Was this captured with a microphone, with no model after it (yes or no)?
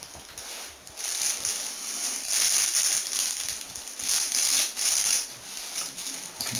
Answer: yes